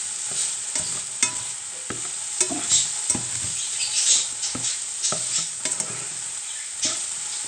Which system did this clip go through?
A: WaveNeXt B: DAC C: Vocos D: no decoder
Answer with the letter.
D